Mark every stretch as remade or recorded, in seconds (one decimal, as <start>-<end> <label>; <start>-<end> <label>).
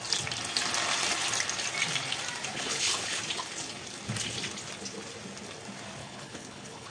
0.0-2.5 recorded; 2.5-3.2 remade; 3.2-6.0 recorded; 6.0-6.9 remade